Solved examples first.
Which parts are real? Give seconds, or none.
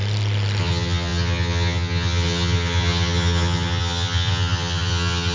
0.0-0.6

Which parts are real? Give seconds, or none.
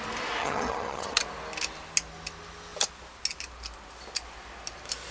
0.0-0.4; 1.2-5.1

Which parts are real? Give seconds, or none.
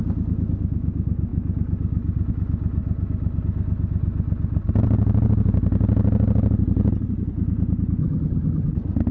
0.0-8.0; 8.7-9.1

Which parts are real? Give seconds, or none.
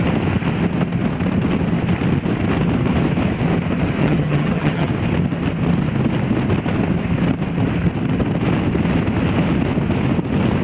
0.0-4.0; 4.9-10.6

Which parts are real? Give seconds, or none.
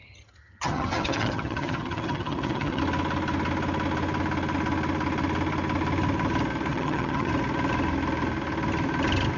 2.8-6.7; 7.3-9.4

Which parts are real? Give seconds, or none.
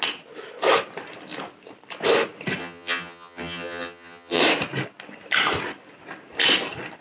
0.0-2.6; 4.4-7.0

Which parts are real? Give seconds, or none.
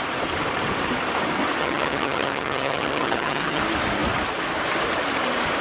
0.0-1.6; 3.6-5.6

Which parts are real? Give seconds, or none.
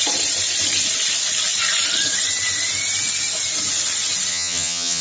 0.0-4.3